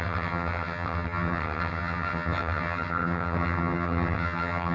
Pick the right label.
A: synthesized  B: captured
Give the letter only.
A